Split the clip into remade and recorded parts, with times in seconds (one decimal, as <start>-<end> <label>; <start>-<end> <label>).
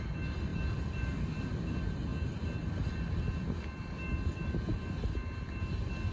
0.0-0.5 recorded; 0.5-1.6 remade; 1.6-6.1 recorded